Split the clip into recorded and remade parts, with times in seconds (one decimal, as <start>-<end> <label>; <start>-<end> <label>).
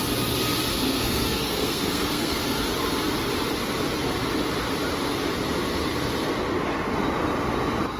0.0-0.7 recorded; 0.7-2.4 remade; 2.4-8.0 recorded